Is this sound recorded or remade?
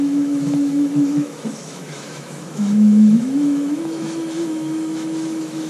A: remade